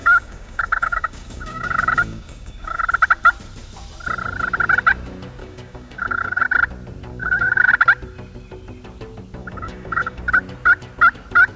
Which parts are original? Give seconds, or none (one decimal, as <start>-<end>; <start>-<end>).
2.8-5.4; 6.4-7.1; 7.7-9.4; 10.2-11.6